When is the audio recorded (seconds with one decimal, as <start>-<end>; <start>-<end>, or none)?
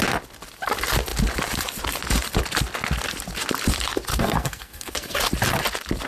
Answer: 0.0-4.1; 5.2-6.1